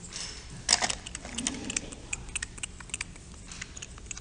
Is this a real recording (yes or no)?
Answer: yes